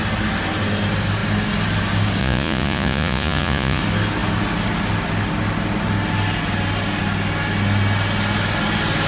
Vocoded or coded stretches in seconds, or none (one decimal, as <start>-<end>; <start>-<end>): 2.2-3.8